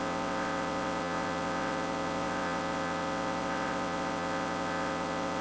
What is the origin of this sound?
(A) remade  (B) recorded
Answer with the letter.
A